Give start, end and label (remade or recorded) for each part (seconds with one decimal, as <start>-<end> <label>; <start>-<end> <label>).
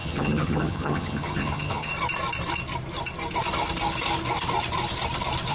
0.0-1.9 remade; 1.9-5.5 recorded